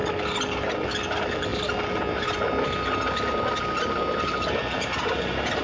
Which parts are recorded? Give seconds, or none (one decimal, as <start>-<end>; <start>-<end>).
0.0-5.6